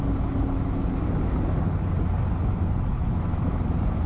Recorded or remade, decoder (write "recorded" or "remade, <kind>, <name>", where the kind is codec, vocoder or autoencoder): recorded